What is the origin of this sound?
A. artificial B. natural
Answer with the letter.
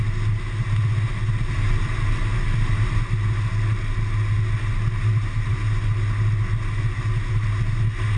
B